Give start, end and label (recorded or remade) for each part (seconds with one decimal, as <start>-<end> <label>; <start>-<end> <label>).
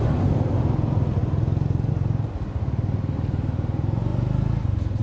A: 0.0-5.0 recorded